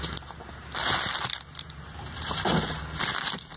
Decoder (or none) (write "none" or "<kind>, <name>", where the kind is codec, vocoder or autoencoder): none